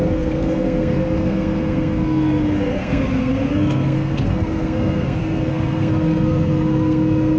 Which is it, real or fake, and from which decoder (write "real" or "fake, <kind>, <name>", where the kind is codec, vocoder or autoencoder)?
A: fake, codec, SNAC